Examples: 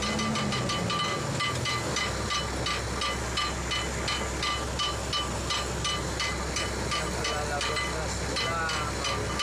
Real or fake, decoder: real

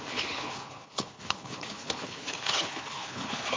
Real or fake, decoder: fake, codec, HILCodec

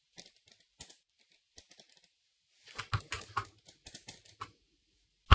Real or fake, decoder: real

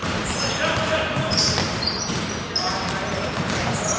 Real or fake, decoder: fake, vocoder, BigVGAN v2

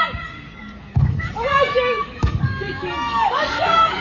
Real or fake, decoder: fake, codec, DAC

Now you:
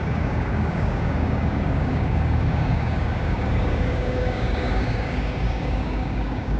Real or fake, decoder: fake, codec, DAC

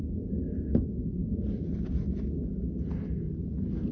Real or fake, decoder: real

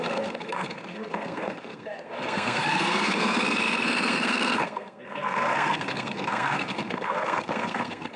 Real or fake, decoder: fake, codec, SNAC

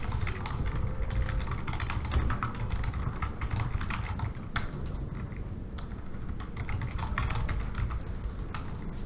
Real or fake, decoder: real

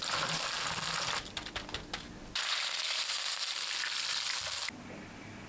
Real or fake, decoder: real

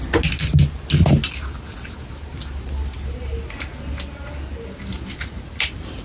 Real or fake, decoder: real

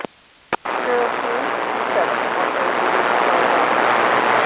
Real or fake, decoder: real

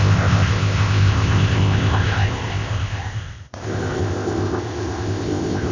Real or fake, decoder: fake, codec, ZipCodec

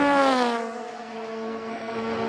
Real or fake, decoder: fake, codec, SNAC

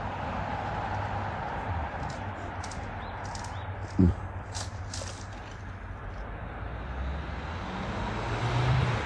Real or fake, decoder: real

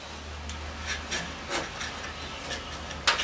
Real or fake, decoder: real